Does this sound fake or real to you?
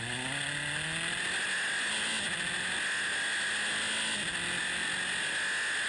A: real